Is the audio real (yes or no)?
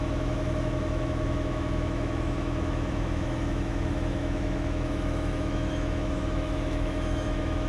no